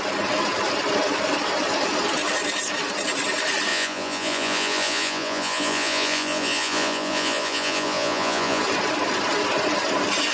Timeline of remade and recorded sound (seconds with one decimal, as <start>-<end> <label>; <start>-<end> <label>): 0.0-3.7 recorded; 3.7-8.6 remade; 8.6-10.3 recorded